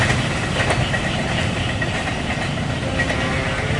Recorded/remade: recorded